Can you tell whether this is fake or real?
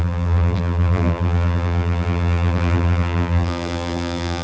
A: fake